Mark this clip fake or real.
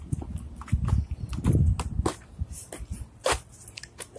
real